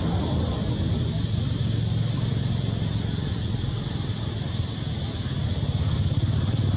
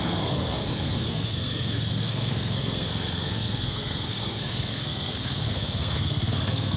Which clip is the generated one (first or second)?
second